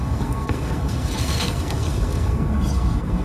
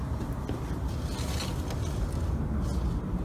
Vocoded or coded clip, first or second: first